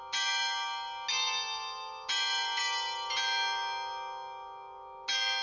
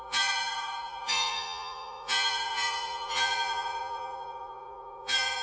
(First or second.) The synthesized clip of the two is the second